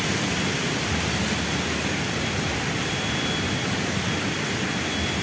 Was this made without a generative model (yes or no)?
yes